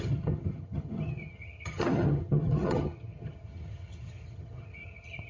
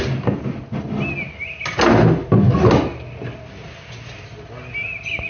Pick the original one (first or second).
second